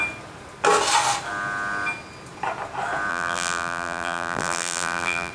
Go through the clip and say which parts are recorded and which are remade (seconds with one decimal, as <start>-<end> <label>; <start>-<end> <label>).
0.0-3.1 recorded; 3.1-5.3 remade